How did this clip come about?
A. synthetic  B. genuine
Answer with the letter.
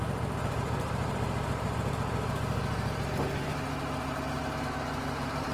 A